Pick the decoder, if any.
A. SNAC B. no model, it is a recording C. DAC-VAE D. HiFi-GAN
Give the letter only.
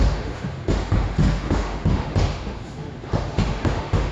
C